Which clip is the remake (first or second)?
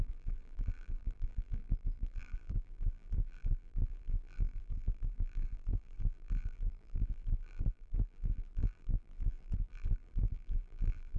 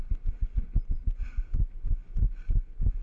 first